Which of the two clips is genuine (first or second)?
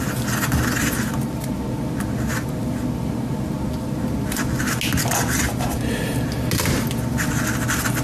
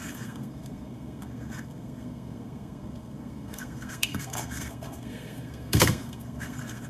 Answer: first